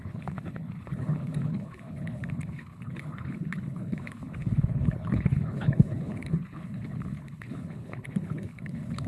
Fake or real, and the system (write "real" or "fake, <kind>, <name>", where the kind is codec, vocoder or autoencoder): fake, codec, HILCodec